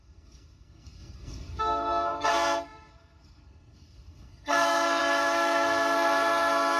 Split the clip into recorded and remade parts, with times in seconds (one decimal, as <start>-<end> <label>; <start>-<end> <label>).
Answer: 0.0-6.8 remade